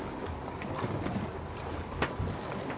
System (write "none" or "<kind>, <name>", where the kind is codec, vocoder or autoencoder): none